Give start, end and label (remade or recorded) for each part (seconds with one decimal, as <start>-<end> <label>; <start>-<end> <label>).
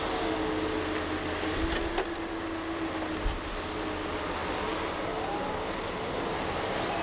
0.0-7.0 recorded